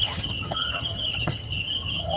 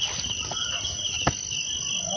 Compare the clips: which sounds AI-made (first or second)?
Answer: first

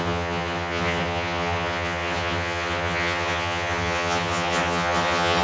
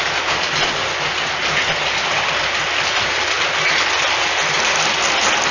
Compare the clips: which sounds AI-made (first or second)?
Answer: first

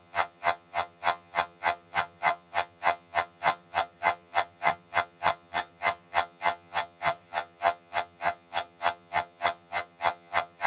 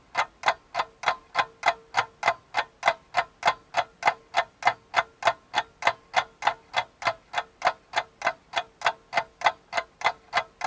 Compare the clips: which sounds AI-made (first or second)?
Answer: first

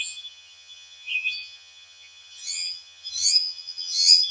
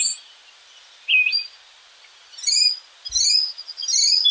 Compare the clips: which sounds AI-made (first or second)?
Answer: first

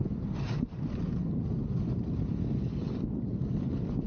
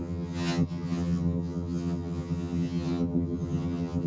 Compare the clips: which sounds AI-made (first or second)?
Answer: second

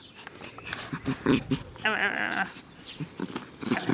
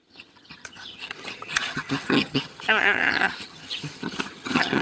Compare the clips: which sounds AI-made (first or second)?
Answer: second